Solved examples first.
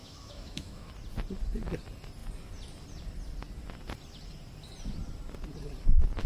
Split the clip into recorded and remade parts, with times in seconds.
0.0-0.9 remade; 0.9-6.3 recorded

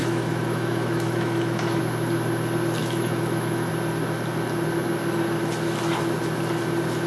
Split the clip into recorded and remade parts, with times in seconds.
0.0-1.8 remade; 1.8-2.8 recorded; 2.8-3.7 remade; 3.7-7.1 recorded

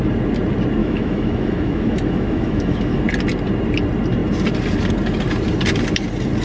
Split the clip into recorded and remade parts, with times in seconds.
0.0-0.8 recorded; 0.8-3.0 remade; 3.0-6.4 recorded

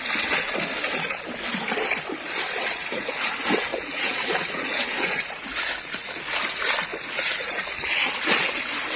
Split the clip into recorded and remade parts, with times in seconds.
0.0-2.6 recorded; 2.6-3.3 remade; 3.3-3.7 recorded; 3.7-6.1 remade; 6.1-6.9 recorded; 6.9-8.3 remade; 8.3-9.0 recorded

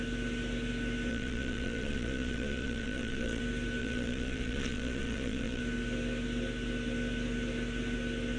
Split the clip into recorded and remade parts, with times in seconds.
0.0-1.1 recorded; 1.1-3.4 remade; 3.4-3.8 recorded; 3.8-5.6 remade; 5.6-8.4 recorded

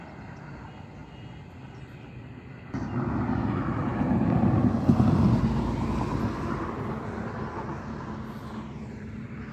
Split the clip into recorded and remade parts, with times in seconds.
0.0-9.5 recorded